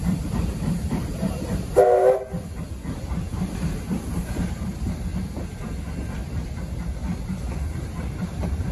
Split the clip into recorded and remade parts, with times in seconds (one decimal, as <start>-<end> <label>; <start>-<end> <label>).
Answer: 0.0-1.2 remade; 1.2-4.1 recorded; 4.1-5.1 remade; 5.1-6.6 recorded; 6.6-8.7 remade